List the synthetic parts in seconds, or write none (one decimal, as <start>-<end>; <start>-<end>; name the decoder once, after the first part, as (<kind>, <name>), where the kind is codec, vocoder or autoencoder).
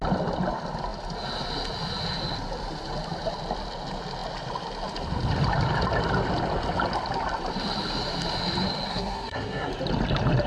8.9-9.7 (codec, SNAC)